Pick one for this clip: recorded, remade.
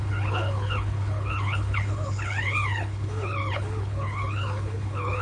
remade